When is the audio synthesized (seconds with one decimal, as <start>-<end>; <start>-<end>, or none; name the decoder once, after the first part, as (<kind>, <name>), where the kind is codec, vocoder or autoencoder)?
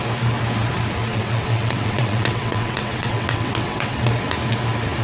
1.1-4.1 (vocoder, WaveNeXt)